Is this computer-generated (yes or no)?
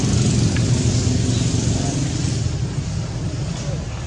no